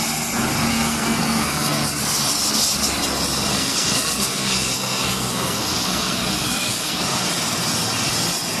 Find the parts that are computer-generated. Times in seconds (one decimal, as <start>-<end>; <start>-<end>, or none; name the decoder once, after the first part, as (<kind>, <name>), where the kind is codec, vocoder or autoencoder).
0.7-2.0 (codec, SNAC); 3.5-7.3